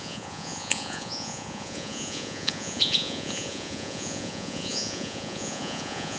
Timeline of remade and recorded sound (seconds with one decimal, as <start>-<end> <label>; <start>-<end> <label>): 0.0-6.2 remade